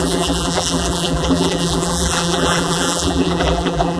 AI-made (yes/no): yes